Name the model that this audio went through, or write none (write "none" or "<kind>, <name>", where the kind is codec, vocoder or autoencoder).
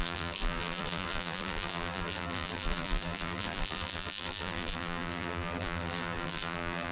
vocoder, BigVGAN v2